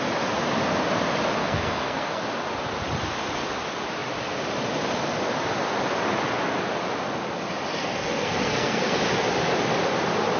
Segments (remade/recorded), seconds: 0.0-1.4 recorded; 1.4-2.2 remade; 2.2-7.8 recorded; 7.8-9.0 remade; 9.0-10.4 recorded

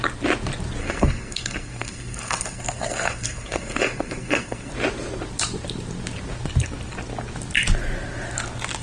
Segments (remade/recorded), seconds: 0.0-0.8 recorded; 0.8-4.7 remade; 4.7-8.8 recorded

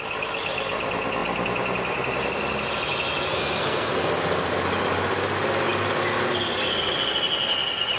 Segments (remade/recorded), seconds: 0.0-3.3 recorded; 3.3-4.1 remade; 4.1-8.0 recorded